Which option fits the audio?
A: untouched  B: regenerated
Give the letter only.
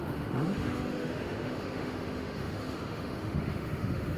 B